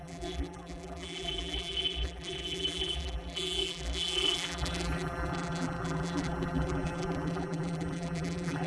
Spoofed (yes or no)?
yes